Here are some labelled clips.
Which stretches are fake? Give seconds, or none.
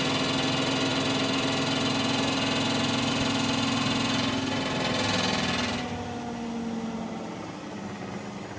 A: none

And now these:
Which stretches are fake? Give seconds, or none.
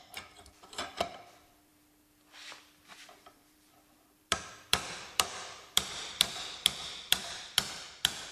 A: 0.0-1.7; 2.6-8.3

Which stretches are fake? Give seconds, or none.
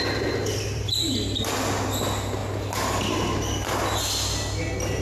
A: 0.0-1.1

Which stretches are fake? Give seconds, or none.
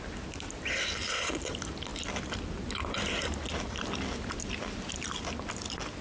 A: none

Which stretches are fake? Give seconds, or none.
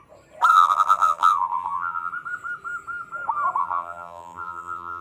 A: 0.5-2.1; 3.6-5.0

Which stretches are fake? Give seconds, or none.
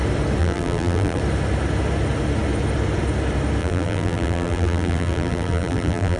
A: 0.4-1.2; 3.6-6.2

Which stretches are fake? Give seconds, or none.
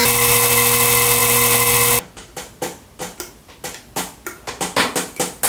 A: none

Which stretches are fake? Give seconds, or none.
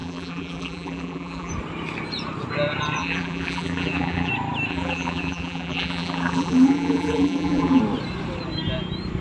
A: 0.0-1.5; 3.0-4.3; 4.7-7.8